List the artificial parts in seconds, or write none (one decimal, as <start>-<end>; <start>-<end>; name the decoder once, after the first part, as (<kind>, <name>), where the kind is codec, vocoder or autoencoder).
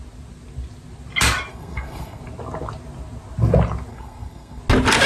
1.5-2.2 (codec, SNAC); 3.9-4.6